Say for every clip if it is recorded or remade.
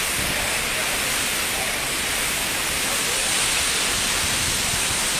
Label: recorded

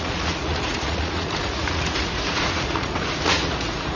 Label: remade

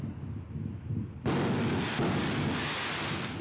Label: recorded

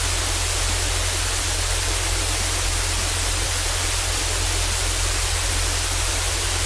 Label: remade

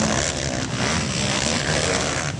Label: recorded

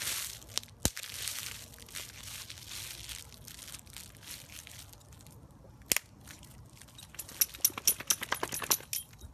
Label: recorded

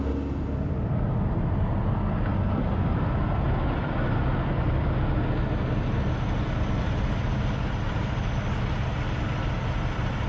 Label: recorded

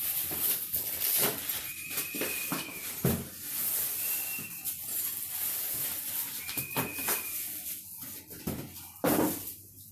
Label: recorded